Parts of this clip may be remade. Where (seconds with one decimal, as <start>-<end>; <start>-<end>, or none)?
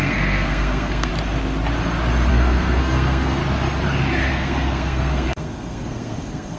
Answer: 0.0-1.1; 2.3-3.4; 4.3-6.6